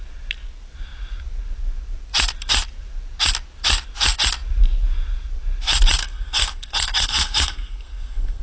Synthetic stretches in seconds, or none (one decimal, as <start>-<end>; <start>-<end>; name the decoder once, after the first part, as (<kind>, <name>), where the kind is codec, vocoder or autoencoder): 6.0-8.4 (codec, SNAC)